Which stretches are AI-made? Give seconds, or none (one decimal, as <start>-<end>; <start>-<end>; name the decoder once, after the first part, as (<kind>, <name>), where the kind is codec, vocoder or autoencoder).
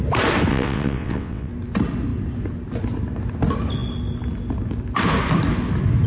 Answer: 0.5-1.5 (vocoder, WaveNeXt)